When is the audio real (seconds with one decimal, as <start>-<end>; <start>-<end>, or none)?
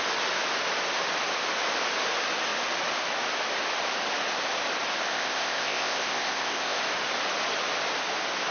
0.0-5.1; 6.8-8.5